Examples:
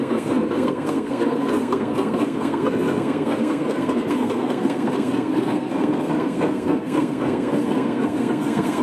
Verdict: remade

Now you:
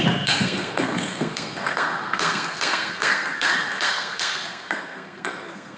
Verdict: remade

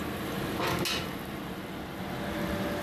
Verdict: recorded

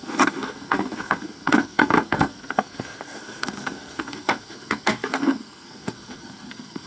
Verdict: remade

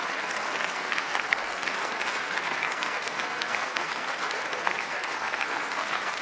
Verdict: remade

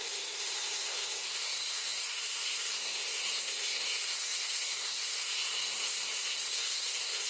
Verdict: remade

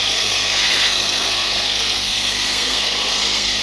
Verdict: remade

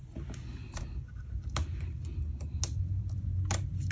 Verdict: recorded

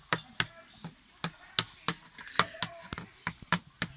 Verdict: recorded